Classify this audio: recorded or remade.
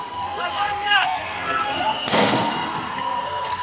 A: remade